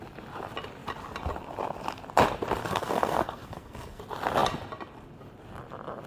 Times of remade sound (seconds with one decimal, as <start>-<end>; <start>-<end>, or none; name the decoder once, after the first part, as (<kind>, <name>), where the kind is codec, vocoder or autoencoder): 2.6-4.0 (codec, SNAC)